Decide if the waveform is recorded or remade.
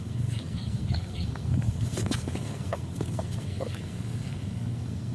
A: remade